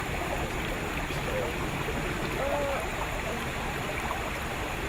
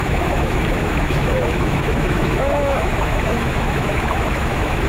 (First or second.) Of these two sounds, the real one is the first